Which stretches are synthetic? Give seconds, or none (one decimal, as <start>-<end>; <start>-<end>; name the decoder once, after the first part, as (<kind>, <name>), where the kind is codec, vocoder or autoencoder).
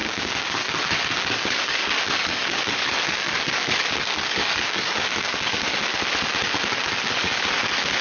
0.0-5.9 (codec, DAC); 7.0-8.0